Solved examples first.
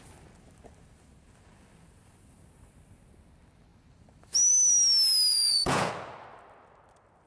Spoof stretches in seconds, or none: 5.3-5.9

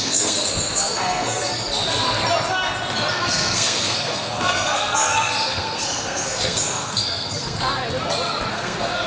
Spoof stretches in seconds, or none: 0.0-1.5; 3.1-7.8; 8.5-9.1

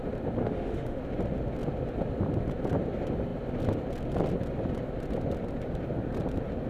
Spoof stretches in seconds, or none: 0.4-1.0

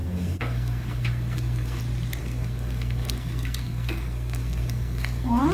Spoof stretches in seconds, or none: 0.0-1.8; 2.2-5.5

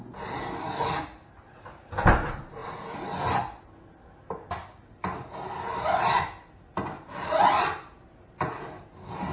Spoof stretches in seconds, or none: none

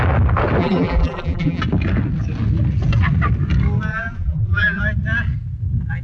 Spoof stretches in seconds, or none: 0.6-1.6; 3.9-4.8